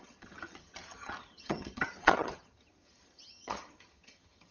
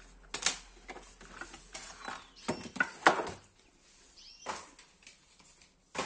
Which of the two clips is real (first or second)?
second